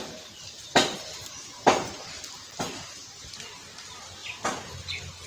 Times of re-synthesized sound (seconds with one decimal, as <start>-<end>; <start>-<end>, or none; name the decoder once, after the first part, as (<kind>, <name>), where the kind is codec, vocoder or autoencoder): none